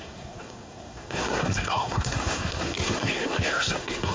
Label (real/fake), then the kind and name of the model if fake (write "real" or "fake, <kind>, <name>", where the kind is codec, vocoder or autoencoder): fake, codec, SNAC